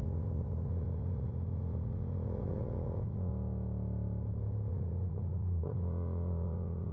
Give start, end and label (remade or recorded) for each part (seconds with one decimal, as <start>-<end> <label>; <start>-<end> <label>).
0.0-3.3 remade; 3.3-4.7 recorded; 4.7-6.9 remade